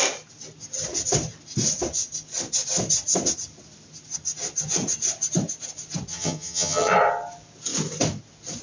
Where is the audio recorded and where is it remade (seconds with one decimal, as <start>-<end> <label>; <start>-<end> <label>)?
0.0-6.1 recorded; 6.1-6.9 remade; 6.9-8.6 recorded